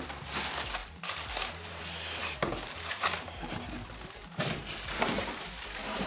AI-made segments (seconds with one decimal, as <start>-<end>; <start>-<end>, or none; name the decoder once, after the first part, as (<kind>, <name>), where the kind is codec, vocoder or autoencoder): 0.8-1.8 (vocoder, BigVGAN v2); 2.2-6.1